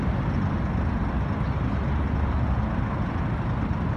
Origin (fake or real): real